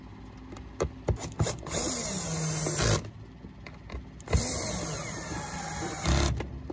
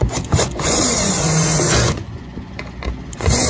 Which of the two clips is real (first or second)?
first